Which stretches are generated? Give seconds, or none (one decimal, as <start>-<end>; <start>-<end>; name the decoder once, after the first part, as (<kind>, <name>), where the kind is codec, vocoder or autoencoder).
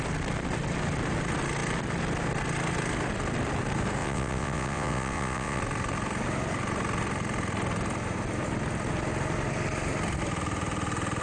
4.0-5.6 (vocoder, WaveNeXt)